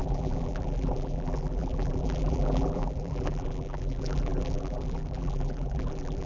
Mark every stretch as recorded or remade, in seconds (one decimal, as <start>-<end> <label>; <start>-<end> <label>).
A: 0.0-6.3 remade

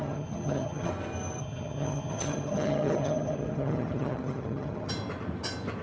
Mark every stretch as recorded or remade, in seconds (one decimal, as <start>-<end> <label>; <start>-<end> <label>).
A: 0.0-0.9 remade; 0.9-1.4 recorded; 1.4-4.9 remade; 4.9-5.8 recorded